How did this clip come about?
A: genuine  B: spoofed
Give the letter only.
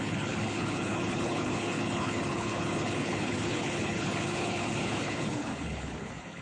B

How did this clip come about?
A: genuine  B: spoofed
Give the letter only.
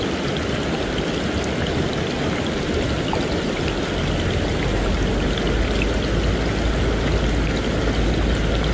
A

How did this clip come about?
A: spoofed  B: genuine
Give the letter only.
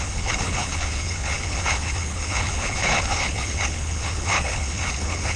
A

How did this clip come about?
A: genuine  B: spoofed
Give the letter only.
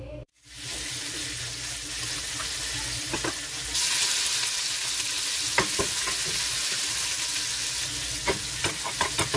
A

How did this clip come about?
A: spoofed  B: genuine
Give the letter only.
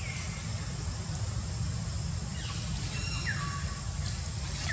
B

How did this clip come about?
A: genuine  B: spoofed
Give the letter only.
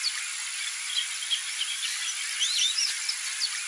A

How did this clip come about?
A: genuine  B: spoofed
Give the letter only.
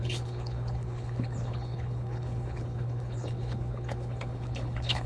B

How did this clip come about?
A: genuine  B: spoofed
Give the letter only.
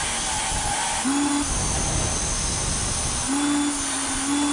A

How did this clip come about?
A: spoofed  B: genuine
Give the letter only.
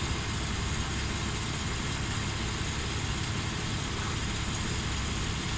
B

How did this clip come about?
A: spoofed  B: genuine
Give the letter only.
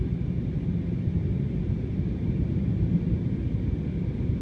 B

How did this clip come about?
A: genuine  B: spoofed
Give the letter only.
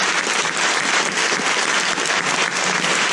A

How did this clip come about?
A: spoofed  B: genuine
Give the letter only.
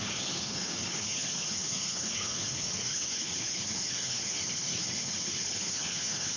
A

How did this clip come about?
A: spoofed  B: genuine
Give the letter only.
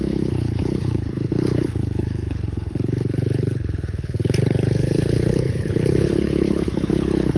A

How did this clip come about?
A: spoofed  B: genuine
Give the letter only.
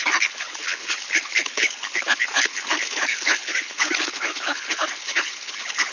A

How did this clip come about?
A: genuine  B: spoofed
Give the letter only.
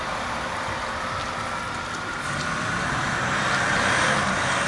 A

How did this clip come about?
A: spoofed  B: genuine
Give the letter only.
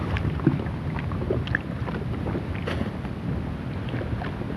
B